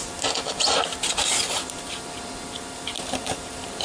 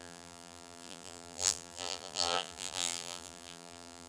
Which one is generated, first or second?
second